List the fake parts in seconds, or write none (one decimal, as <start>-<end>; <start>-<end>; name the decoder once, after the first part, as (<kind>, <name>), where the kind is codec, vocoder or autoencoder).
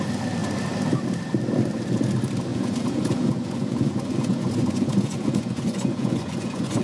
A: 2.5-6.8 (vocoder, Vocos)